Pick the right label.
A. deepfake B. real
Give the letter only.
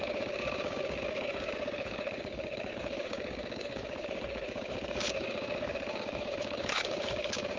A